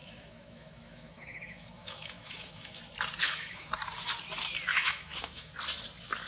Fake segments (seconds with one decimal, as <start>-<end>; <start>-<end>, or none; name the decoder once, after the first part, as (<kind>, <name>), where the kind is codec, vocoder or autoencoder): 0.0-2.8 (autoencoder, DAC-VAE); 3.2-3.7; 4.7-5.5